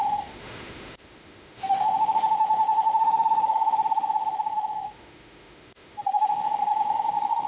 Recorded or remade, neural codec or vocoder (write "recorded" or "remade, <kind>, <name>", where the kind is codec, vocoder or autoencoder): remade, autoencoder, DAC-VAE